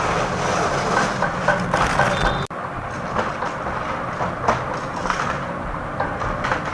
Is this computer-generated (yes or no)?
no